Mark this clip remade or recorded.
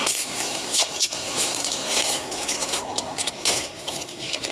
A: remade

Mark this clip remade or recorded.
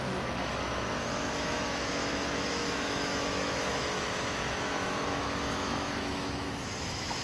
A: remade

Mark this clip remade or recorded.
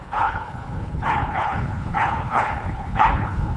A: remade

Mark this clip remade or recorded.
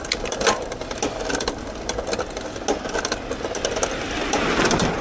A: recorded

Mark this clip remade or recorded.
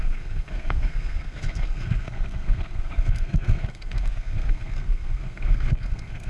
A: remade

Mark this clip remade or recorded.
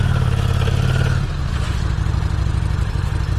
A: recorded